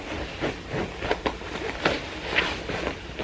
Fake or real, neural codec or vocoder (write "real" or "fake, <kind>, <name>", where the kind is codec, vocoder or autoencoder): real